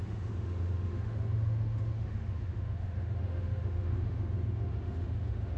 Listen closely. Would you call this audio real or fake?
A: fake